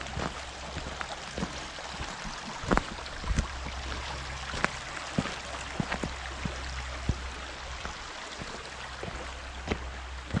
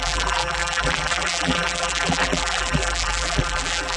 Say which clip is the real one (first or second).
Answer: first